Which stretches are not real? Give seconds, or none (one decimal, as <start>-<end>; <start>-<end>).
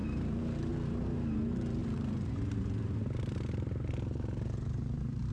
0.0-0.7; 1.8-5.3